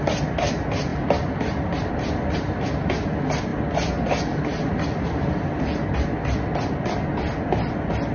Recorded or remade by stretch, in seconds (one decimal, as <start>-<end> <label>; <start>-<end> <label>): 0.0-8.1 recorded